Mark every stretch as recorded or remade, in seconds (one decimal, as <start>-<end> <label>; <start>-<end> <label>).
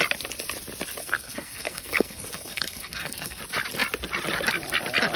0.0-1.0 recorded; 1.0-3.4 remade; 3.4-5.2 recorded